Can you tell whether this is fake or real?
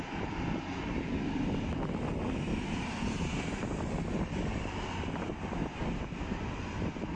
real